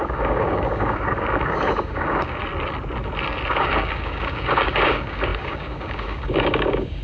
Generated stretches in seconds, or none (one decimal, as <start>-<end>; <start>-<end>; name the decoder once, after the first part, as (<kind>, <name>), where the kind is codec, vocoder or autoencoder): 0.0-2.4 (codec, DAC); 3.5-7.0